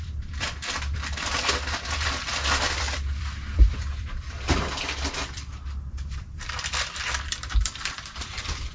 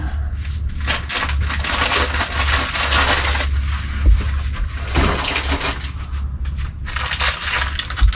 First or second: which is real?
second